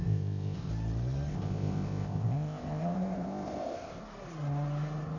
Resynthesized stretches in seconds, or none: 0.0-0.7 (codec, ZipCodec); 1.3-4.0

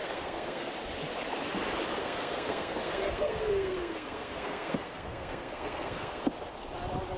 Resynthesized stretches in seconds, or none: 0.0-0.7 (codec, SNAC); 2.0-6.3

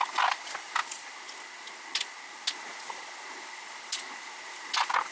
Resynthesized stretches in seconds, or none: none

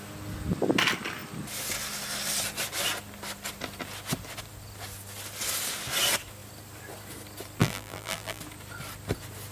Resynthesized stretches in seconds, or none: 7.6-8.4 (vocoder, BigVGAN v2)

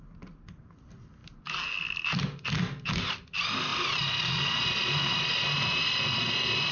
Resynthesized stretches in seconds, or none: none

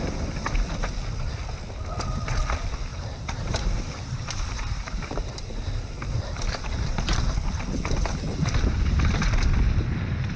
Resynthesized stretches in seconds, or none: 2.9-7.2 (vocoder, BigVGAN v2)

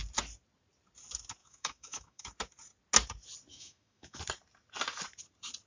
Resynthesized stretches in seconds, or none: 1.4-2.3 (autoencoder, DAC-VAE); 3.5-4.2

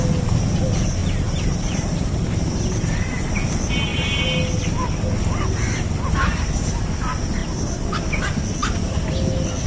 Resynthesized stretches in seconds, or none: 1.0-3.3 (vocoder, BigVGAN v2); 7.4-8.0